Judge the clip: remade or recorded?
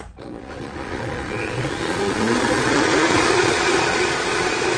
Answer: remade